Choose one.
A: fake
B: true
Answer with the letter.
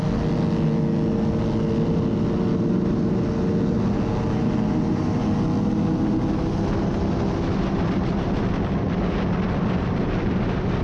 B